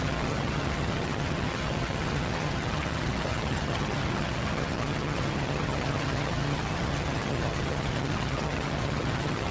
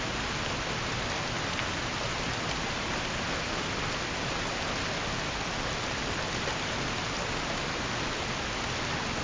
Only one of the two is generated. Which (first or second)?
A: first